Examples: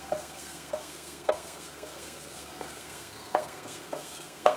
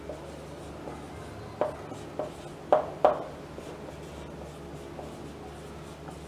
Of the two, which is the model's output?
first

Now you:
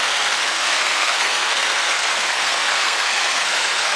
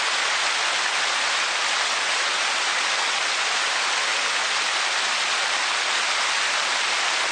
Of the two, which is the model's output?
first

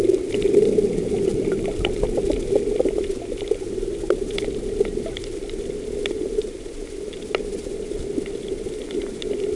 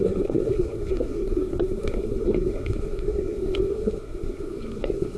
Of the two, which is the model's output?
second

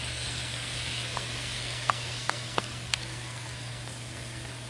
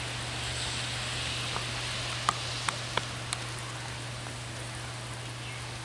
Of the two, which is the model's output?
first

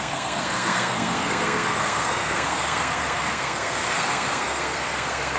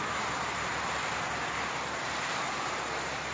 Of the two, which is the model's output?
first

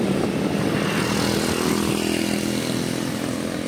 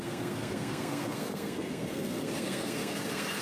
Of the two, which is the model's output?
second